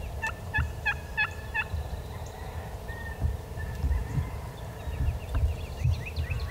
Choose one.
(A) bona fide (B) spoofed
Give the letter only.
B